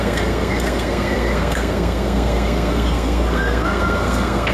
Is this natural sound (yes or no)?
no